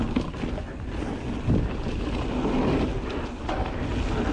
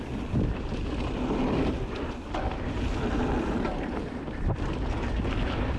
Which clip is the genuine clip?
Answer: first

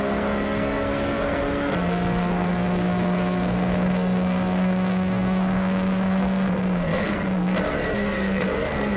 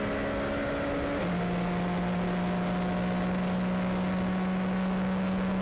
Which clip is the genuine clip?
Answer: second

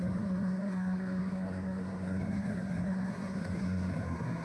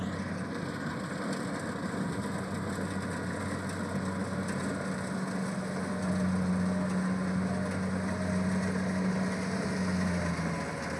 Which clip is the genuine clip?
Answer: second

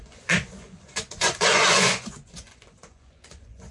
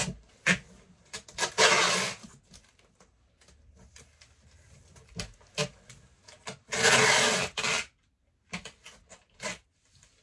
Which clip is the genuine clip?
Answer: second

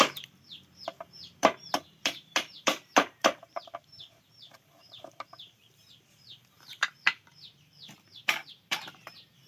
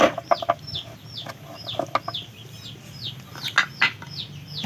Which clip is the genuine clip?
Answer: second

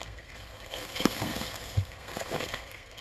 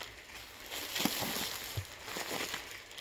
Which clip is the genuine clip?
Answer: second